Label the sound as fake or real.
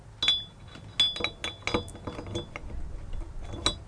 real